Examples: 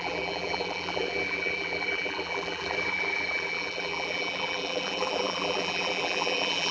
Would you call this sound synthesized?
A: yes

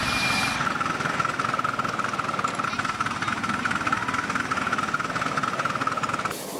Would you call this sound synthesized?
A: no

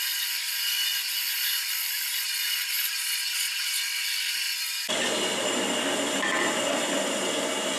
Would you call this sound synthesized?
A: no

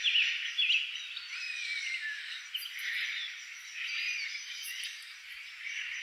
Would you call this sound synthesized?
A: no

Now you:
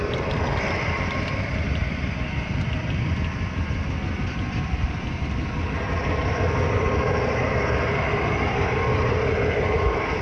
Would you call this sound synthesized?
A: yes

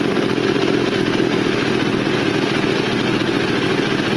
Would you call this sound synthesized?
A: no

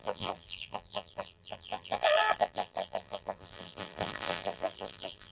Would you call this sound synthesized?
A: yes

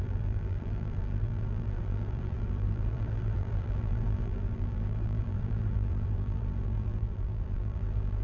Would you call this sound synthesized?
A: yes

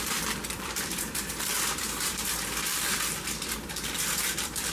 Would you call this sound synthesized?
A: yes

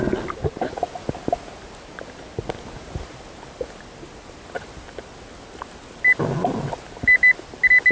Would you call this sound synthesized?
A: no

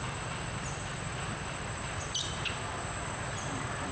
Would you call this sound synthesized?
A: yes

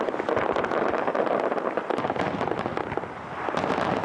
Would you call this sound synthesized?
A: no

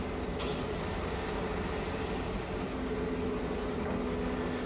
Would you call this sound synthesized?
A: no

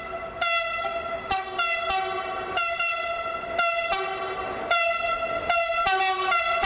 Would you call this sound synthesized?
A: no